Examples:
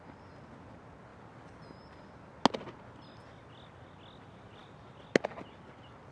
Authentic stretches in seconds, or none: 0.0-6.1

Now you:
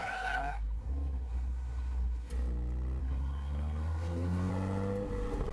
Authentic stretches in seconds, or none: 2.3-3.0; 4.5-5.5

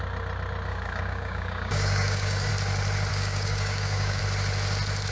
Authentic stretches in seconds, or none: 0.0-0.7; 2.5-3.1; 4.2-5.1

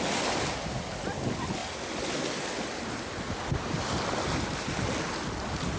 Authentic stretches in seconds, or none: 0.0-5.8

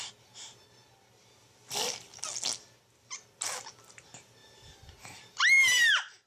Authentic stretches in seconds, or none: 0.0-4.4

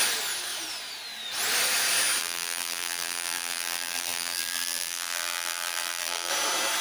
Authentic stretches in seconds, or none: 0.0-2.2; 6.3-6.8

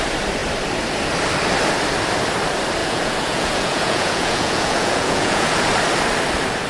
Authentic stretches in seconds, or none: 0.0-2.8; 5.6-6.7